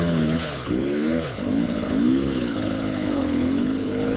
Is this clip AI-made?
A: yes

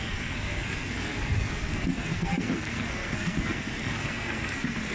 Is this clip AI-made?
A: yes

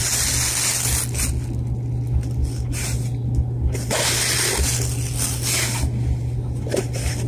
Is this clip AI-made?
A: no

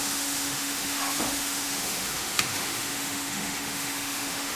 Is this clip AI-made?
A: yes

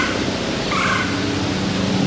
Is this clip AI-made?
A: no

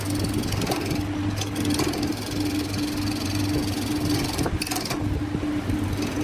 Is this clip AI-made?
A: no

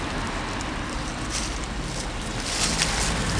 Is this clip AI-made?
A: no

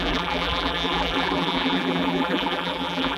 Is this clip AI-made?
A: yes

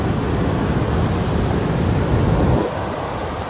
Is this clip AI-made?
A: no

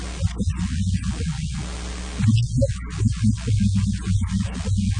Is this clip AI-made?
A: no